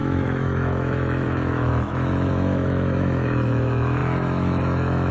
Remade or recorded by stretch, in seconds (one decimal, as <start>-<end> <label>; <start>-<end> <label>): 0.0-5.1 remade